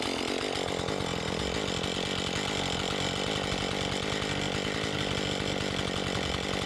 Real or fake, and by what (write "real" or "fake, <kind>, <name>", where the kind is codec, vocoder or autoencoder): real